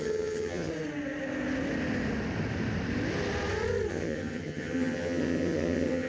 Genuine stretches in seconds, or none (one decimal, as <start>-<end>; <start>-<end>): 0.7-3.9